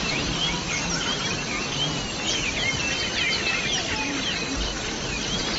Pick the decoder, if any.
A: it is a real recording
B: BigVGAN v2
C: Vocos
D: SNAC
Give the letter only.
A